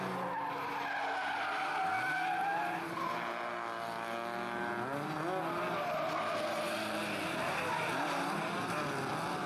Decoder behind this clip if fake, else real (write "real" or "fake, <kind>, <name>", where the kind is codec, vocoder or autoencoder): real